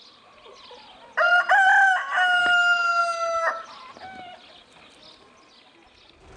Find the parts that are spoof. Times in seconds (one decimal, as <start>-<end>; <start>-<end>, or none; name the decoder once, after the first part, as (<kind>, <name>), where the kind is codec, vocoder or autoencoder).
none